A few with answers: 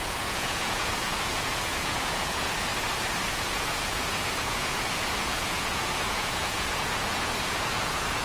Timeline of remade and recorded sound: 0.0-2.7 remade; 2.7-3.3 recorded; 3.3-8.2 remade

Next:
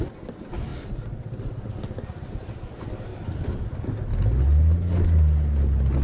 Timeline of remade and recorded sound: 0.0-6.0 recorded

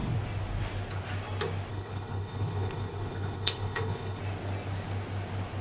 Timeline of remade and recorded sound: 0.0-1.7 recorded; 1.7-4.2 remade; 4.2-5.6 recorded

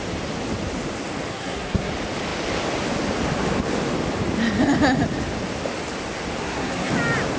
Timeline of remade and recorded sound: 0.0-1.3 recorded; 1.3-1.9 remade; 1.9-6.4 recorded; 6.4-6.9 remade; 6.9-7.4 recorded

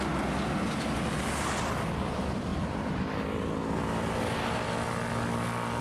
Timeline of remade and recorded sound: 0.0-5.8 recorded

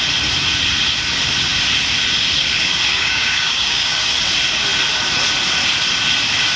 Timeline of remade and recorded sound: 0.0-2.9 recorded; 2.9-4.1 remade; 4.1-6.6 recorded

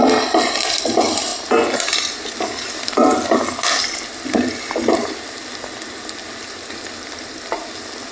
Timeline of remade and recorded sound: 0.0-8.1 recorded